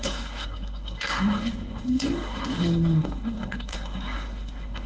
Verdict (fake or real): fake